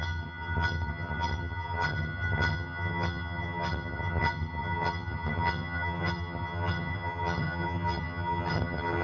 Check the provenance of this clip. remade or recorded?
remade